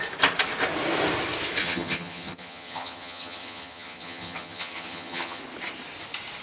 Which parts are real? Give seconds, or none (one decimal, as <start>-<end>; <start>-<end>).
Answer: 0.0-1.6; 5.4-6.4